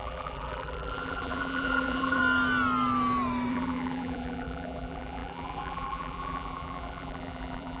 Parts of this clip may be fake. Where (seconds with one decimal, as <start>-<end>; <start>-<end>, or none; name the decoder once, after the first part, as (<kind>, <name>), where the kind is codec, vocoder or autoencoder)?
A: 0.0-2.2 (vocoder, BigVGAN v2); 3.5-7.8